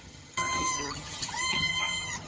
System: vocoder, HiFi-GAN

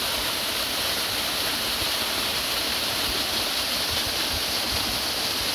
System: none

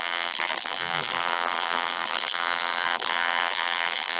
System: vocoder, BigVGAN v2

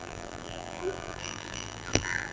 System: vocoder, BigVGAN v2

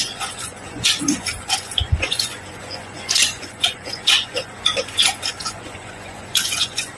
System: vocoder, Vocos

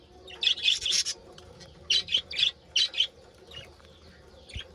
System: none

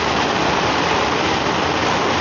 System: none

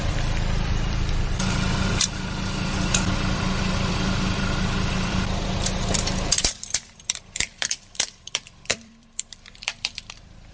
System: vocoder, BigVGAN v2